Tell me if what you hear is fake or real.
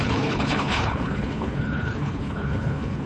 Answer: fake